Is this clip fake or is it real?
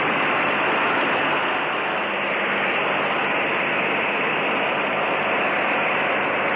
real